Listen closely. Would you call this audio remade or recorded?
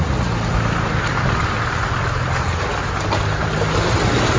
recorded